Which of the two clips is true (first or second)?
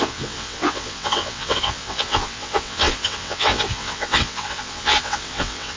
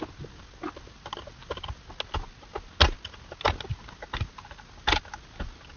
second